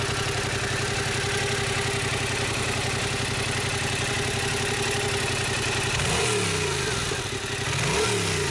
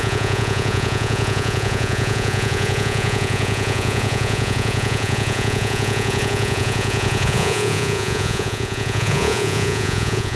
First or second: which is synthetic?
second